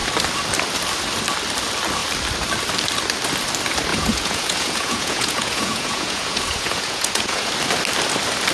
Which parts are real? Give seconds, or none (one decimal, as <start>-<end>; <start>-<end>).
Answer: 0.0-3.9; 7.5-8.5